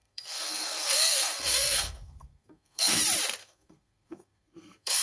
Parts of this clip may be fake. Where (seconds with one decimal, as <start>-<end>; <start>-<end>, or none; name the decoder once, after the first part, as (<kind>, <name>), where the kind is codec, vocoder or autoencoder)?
0.0-3.0 (codec, SNAC); 3.4-5.0